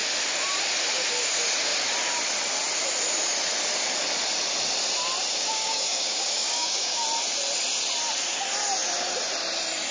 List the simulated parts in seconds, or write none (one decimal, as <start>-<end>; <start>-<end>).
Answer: 5.4-7.0